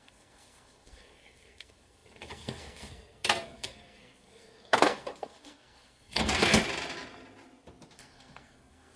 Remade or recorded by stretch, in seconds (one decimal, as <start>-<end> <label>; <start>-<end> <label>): 0.0-6.6 remade; 6.6-8.0 recorded; 8.0-9.0 remade